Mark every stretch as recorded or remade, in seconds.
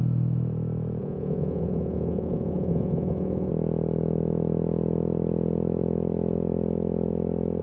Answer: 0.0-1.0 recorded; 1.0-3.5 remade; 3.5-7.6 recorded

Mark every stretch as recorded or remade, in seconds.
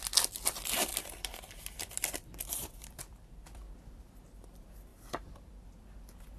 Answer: 0.0-0.9 recorded; 0.9-4.0 remade; 4.0-4.9 recorded; 4.9-5.5 remade; 5.5-6.4 recorded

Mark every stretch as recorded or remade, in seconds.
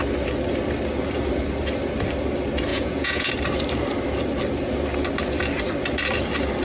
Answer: 0.0-2.7 recorded; 2.7-3.3 remade; 3.3-6.6 recorded